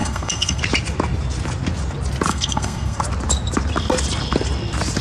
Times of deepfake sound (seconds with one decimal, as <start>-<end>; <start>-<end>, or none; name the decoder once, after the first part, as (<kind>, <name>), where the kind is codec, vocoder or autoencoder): 0.0-0.6 (codec, SNAC); 2.3-3.0